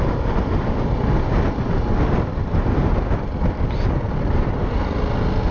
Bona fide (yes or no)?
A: yes